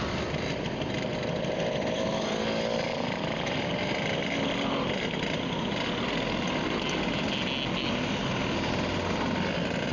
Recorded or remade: recorded